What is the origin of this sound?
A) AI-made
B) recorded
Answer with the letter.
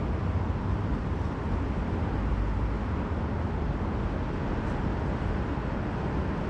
B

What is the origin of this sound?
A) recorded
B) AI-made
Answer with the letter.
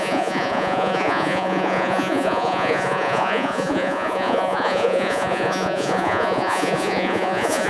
B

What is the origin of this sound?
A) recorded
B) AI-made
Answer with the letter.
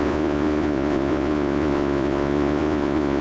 B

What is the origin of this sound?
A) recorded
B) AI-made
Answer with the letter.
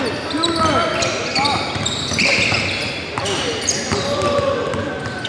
A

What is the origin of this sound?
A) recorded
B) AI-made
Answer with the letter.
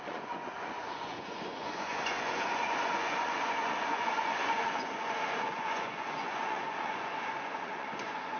B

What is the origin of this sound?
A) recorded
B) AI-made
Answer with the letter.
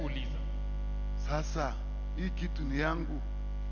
A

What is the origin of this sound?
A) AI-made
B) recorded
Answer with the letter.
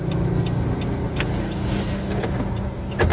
B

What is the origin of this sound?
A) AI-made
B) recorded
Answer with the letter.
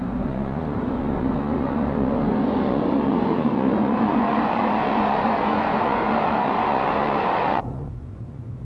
A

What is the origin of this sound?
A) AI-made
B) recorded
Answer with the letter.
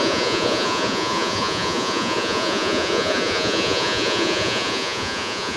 A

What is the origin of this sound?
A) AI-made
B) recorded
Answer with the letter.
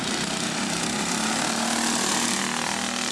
B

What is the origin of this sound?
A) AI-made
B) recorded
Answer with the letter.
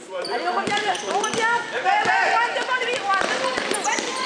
B